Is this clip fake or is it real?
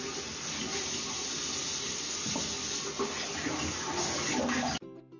real